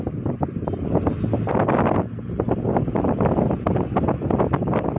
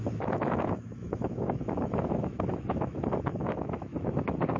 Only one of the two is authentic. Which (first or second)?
first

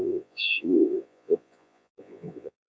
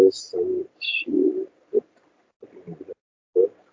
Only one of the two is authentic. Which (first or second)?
second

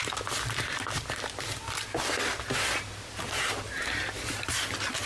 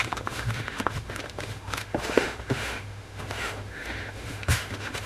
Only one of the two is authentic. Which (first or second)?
first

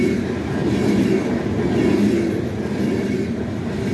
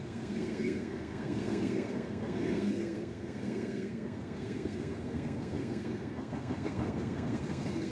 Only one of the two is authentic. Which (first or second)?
first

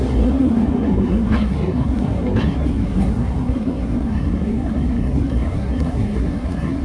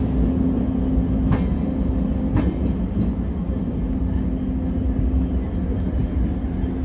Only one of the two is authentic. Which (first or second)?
second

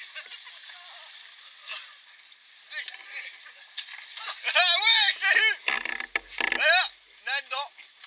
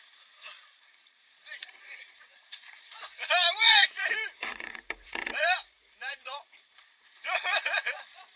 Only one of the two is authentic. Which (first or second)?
first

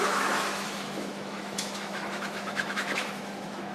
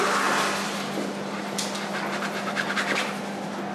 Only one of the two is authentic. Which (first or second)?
second